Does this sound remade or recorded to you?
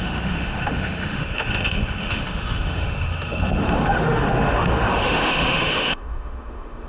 remade